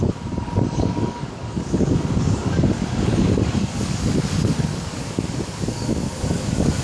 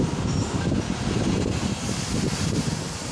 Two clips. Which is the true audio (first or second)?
second